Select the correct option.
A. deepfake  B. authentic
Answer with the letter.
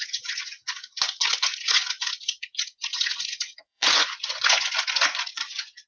A